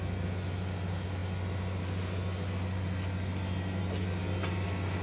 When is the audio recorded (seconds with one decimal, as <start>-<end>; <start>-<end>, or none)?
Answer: 0.0-5.0